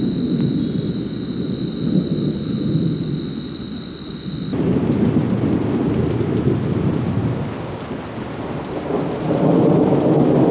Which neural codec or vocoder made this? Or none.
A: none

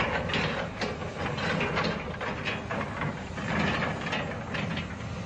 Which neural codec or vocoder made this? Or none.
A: none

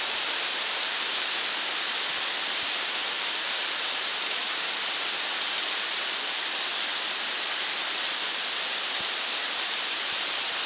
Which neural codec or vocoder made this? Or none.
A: vocoder, BigVGAN v2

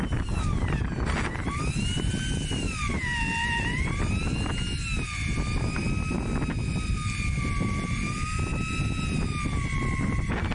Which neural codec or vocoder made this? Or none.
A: none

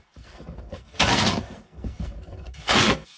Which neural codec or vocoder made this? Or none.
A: codec, SNAC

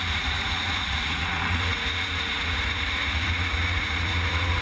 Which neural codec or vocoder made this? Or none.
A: vocoder, Vocos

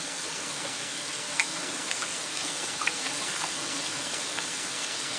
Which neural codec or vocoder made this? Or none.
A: codec, SNAC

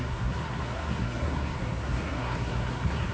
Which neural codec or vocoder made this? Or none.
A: codec, SNAC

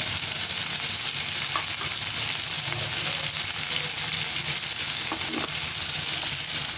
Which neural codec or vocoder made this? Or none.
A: none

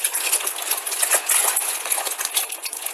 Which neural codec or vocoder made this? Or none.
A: vocoder, Vocos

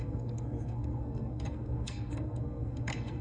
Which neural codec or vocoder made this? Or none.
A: codec, SNAC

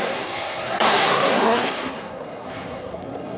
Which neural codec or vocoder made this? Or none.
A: codec, SNAC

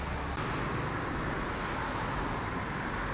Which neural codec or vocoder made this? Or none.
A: none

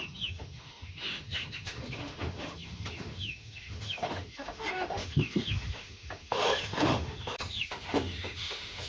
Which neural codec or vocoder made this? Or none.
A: autoencoder, DAC-VAE